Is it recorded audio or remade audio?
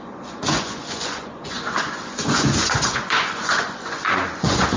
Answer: remade